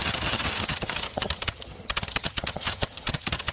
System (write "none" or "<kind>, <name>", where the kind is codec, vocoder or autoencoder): vocoder, HiFi-GAN